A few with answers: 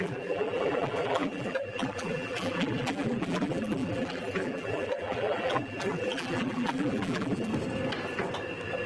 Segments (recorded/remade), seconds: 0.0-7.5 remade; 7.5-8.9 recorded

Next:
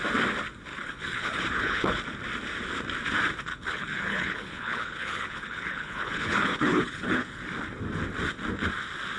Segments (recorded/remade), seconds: 0.0-0.7 recorded; 0.7-2.0 remade; 2.0-3.5 recorded; 3.5-7.4 remade; 7.4-9.2 recorded

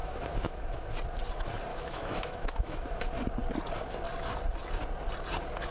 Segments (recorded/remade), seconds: 0.0-0.8 remade; 0.8-1.7 recorded; 1.7-3.0 remade; 3.0-5.7 recorded